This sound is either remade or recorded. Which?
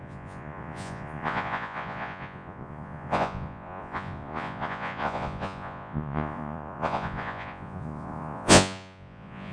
remade